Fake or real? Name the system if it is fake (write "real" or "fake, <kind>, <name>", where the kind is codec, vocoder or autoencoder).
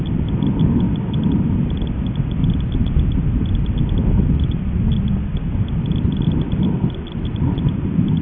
real